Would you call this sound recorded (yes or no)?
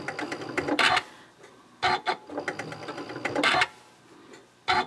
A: yes